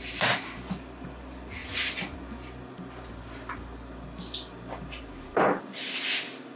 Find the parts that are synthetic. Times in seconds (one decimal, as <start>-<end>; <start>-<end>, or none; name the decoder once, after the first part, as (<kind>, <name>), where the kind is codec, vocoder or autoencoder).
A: none